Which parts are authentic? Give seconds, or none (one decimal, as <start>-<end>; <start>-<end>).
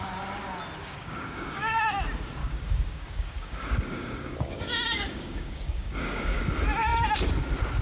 0.0-0.8; 1.8-2.4; 6.4-7.8